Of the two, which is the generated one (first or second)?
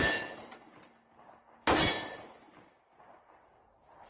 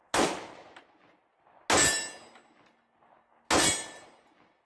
first